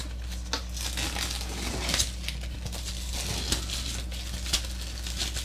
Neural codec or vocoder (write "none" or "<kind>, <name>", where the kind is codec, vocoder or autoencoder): none